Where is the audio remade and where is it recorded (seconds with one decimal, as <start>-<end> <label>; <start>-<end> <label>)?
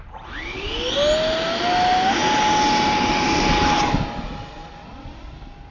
0.0-5.7 recorded